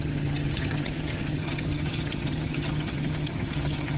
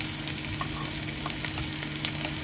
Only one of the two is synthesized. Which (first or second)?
first